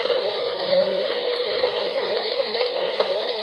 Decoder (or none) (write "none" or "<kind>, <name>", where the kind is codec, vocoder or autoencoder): codec, SNAC